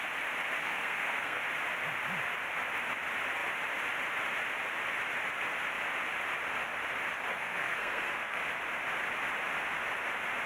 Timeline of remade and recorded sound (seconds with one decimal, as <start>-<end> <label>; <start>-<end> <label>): 0.0-0.6 recorded; 0.6-1.4 remade; 1.4-7.3 recorded; 7.3-8.4 remade; 8.4-10.5 recorded